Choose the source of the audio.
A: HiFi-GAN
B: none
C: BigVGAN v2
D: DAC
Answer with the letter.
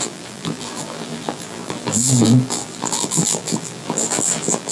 C